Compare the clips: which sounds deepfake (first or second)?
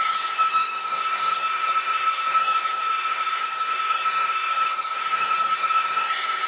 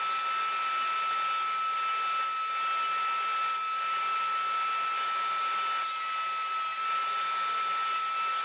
first